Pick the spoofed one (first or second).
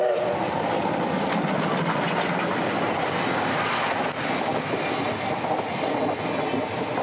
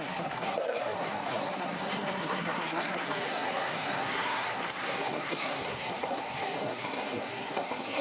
second